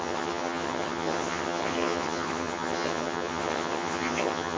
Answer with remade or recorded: remade